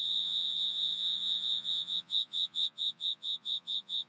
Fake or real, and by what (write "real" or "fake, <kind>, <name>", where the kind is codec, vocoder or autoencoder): fake, vocoder, Vocos